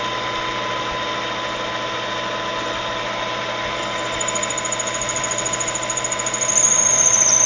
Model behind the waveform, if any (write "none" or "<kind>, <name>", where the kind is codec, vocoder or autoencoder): none